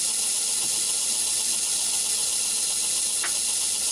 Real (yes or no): yes